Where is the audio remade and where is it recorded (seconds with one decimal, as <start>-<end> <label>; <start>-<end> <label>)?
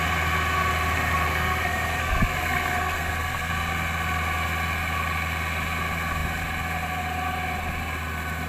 0.0-1.3 recorded; 1.3-3.5 remade; 3.5-8.5 recorded